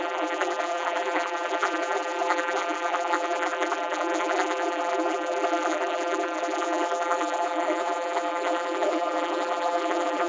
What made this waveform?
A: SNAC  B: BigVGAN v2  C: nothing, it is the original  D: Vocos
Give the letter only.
B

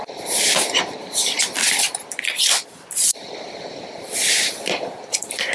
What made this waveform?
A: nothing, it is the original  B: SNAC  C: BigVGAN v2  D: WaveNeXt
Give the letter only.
C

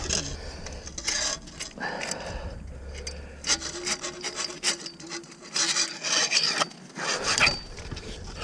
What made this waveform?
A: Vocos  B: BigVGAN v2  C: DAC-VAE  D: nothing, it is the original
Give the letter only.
D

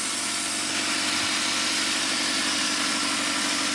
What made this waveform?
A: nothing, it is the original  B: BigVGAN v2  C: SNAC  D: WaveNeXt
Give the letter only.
A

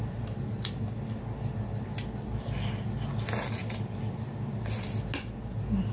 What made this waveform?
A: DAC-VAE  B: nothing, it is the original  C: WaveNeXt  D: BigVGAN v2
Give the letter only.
B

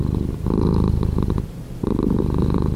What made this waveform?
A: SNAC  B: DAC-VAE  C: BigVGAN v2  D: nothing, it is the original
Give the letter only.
D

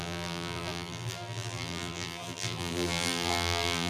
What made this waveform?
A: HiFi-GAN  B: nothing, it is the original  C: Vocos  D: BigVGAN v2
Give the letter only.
D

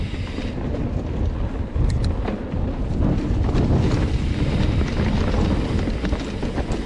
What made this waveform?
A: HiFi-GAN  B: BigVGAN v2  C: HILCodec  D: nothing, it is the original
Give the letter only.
D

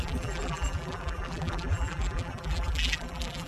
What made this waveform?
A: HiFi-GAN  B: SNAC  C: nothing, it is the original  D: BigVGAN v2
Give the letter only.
D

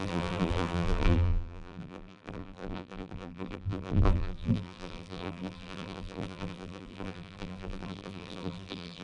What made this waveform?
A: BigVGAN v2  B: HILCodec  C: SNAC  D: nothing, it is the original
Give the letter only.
A